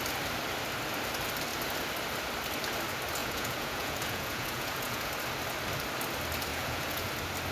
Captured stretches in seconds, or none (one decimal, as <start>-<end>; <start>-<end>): 0.0-3.2; 5.1-6.5; 7.1-7.5